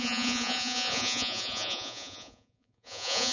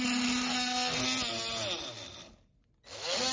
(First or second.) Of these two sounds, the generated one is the first